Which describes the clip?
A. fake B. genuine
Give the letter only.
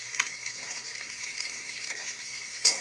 A